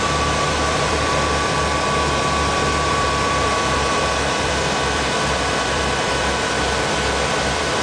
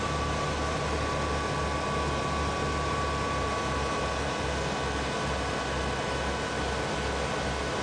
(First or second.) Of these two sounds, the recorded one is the second